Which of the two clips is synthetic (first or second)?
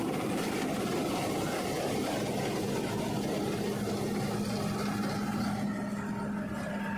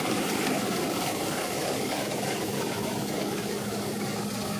second